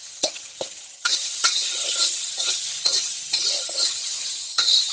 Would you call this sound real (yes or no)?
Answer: no